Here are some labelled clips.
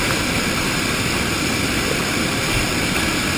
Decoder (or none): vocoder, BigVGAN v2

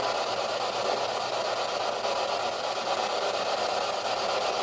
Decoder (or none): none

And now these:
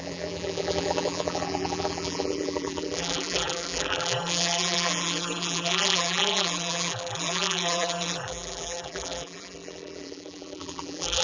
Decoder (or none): vocoder, BigVGAN v2